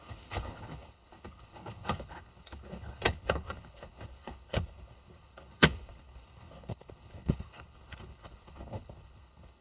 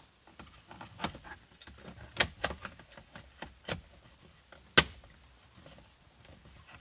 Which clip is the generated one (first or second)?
first